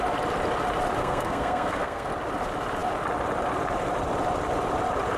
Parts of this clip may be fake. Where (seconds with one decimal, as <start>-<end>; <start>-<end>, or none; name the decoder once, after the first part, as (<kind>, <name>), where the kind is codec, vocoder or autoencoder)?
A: 1.0-2.1 (codec, SNAC)